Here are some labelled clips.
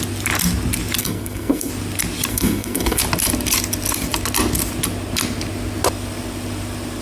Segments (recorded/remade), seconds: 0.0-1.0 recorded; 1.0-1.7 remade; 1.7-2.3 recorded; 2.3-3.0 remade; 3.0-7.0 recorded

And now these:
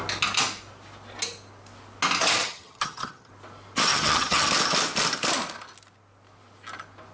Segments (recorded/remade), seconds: 0.0-2.4 recorded; 2.4-3.3 remade; 3.3-3.9 recorded; 3.9-4.5 remade; 4.5-7.1 recorded

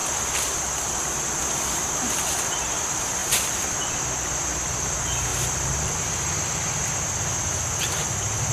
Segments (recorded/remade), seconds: 0.0-3.2 recorded; 3.2-4.0 remade; 4.0-5.3 recorded; 5.3-6.0 remade; 6.0-8.5 recorded

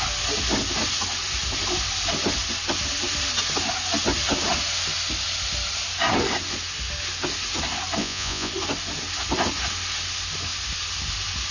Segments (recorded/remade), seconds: 0.0-8.0 recorded; 8.0-8.5 remade; 8.5-11.5 recorded

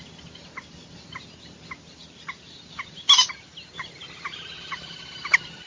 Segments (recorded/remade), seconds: 0.0-5.7 recorded

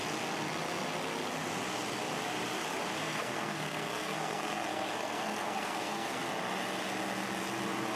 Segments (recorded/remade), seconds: 0.0-3.0 recorded; 3.0-6.2 remade; 6.2-8.0 recorded

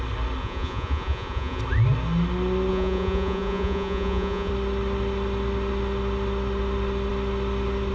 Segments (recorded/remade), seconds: 0.0-0.4 recorded; 0.4-1.6 remade; 1.6-2.7 recorded; 2.7-4.5 remade; 4.5-7.9 recorded

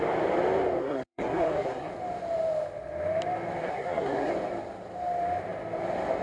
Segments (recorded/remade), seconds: 0.0-0.8 recorded; 0.8-1.9 remade; 1.9-3.6 recorded; 3.6-4.3 remade; 4.3-6.2 recorded